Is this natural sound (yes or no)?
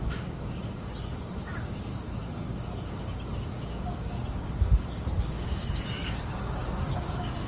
no